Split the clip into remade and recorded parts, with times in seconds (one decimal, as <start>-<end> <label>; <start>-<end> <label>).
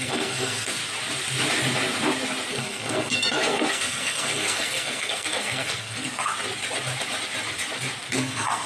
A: 0.0-0.8 remade; 0.8-2.5 recorded; 2.5-6.3 remade; 6.3-8.1 recorded; 8.1-8.7 remade